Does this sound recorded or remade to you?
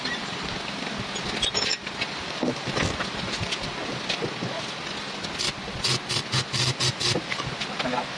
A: recorded